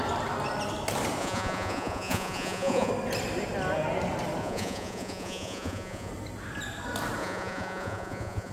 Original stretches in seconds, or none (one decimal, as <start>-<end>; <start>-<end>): 0.0-1.2; 2.9-4.4; 6.1-7.2